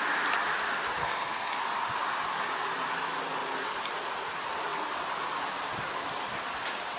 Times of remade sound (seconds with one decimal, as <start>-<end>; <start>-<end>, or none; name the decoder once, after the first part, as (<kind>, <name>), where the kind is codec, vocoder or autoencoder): 1.0-1.5 (codec, SNAC)